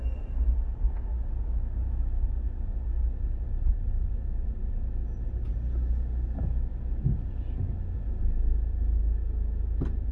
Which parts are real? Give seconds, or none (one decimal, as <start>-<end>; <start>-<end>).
0.0-10.1